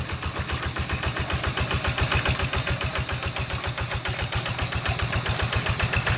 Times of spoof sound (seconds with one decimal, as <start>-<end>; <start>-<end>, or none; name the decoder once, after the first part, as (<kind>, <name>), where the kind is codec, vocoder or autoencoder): none